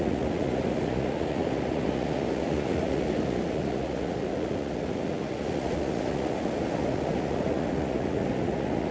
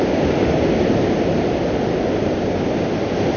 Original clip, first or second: second